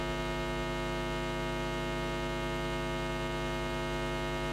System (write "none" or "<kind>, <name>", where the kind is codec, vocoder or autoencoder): none